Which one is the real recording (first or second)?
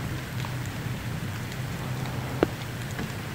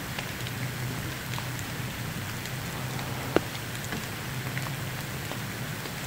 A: second